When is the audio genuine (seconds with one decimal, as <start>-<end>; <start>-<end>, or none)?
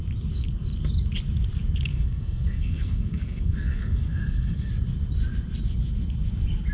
0.0-1.9; 4.7-6.7